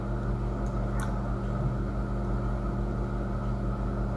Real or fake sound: real